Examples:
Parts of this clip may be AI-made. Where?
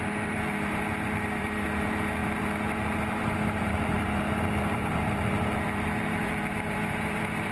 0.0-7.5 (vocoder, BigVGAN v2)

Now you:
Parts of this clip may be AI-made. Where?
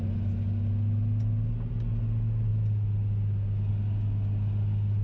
none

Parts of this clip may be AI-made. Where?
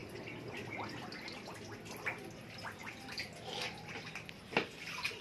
none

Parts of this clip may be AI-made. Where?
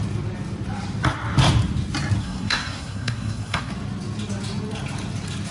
2.2-3.7 (codec, SNAC)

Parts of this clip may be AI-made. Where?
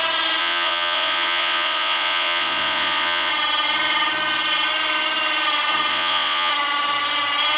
0.4-3.3 (vocoder, Vocos); 5.9-6.5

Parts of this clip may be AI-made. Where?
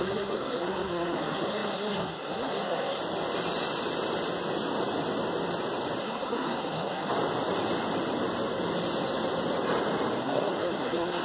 0.0-3.0 (codec, SNAC); 6.0-7.1; 10.2-11.2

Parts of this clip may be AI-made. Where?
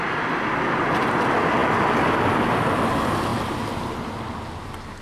none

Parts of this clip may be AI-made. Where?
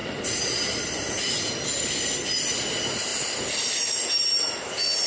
0.0-1.2 (vocoder, BigVGAN v2)